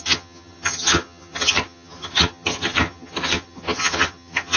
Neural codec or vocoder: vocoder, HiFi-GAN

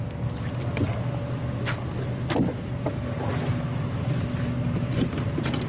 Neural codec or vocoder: none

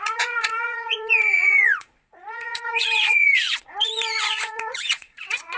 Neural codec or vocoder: vocoder, Vocos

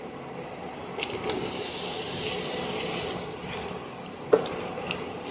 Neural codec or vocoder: none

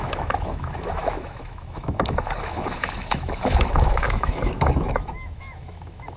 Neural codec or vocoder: autoencoder, DAC-VAE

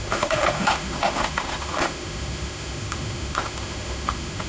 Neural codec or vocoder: autoencoder, DAC-VAE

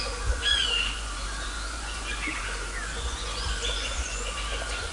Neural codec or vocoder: vocoder, Vocos